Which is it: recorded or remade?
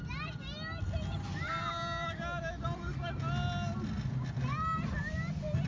recorded